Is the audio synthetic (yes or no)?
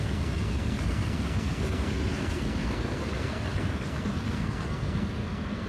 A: yes